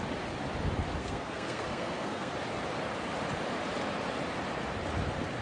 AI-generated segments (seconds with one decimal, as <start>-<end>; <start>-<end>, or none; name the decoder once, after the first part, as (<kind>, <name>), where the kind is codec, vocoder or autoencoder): 1.0-2.3 (codec, SNAC)